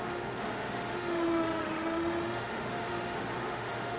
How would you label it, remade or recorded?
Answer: remade